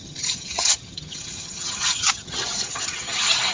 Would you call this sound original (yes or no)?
no